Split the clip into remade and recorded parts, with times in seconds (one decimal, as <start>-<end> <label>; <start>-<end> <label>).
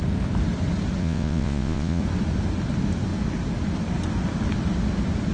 0.0-1.0 recorded; 1.0-2.0 remade; 2.0-5.3 recorded